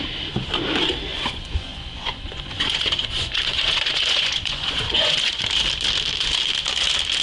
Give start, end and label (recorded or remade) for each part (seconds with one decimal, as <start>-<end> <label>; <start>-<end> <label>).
0.0-1.1 recorded; 1.1-5.4 remade; 5.4-7.2 recorded